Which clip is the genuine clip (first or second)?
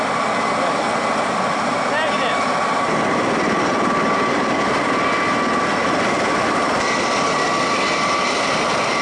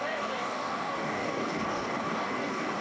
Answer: first